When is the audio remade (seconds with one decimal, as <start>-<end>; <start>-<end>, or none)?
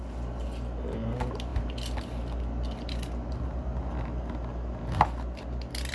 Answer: none